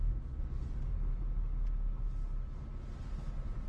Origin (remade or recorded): recorded